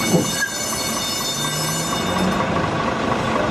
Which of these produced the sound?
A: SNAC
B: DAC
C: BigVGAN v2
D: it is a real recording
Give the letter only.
D